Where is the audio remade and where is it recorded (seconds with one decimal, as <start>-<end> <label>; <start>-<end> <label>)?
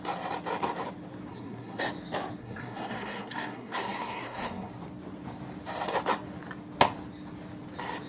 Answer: 0.0-1.3 recorded; 1.3-1.9 remade; 1.9-2.4 recorded; 2.4-4.7 remade; 4.7-8.1 recorded